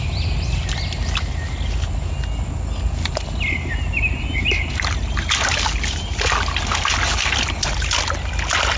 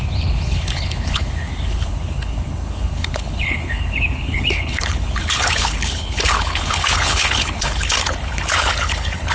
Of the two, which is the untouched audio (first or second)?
first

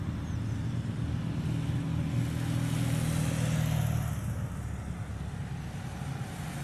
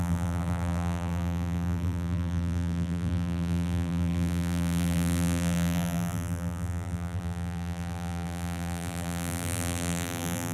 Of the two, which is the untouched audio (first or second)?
first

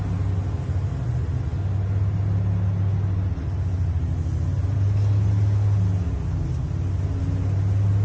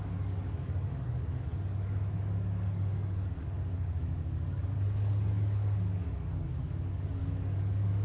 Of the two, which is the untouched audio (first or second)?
first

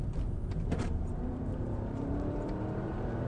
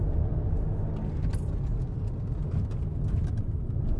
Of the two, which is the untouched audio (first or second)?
second